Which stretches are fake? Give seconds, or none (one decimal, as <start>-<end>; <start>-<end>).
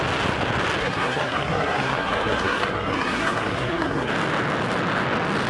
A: 0.8-4.1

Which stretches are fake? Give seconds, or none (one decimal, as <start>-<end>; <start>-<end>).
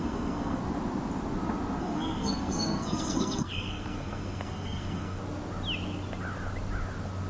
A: 0.0-0.6; 1.8-5.2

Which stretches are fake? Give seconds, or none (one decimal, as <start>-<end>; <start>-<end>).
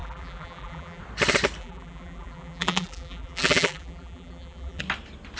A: 0.0-1.0; 1.6-4.8